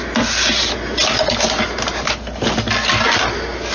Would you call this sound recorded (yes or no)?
yes